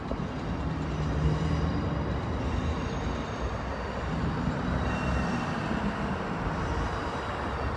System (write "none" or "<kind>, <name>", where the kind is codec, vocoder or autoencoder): none